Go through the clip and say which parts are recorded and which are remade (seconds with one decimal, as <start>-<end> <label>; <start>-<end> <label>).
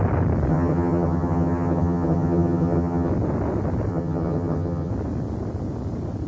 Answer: 0.0-0.5 recorded; 0.5-3.1 remade; 3.1-3.9 recorded; 3.9-4.9 remade; 4.9-6.3 recorded